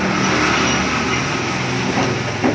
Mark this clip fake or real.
real